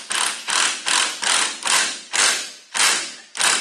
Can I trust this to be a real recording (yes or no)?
yes